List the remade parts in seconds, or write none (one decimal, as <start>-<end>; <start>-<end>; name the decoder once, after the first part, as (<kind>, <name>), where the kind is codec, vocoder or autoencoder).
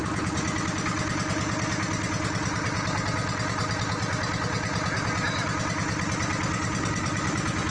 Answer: none